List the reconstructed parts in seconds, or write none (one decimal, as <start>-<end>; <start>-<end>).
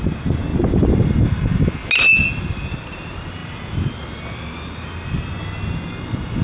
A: none